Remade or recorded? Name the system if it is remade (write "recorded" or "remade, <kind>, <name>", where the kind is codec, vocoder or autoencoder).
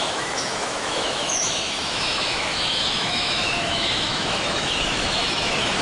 remade, autoencoder, DAC-VAE